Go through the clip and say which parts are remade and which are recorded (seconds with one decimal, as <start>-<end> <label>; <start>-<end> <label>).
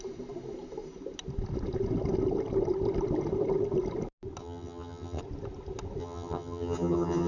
0.0-4.4 recorded; 4.4-5.2 remade; 5.2-6.0 recorded; 6.0-7.3 remade